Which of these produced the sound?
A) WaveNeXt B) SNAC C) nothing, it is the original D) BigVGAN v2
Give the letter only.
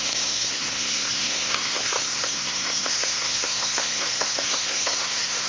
B